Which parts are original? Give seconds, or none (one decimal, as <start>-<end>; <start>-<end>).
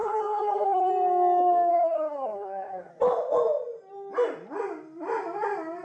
0.9-1.7; 2.9-5.8